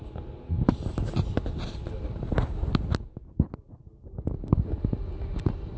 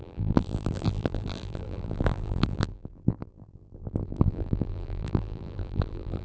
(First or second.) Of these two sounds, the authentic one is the first